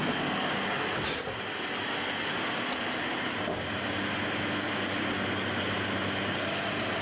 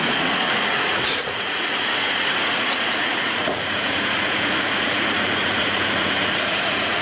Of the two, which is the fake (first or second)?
second